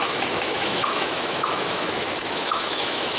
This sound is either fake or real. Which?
fake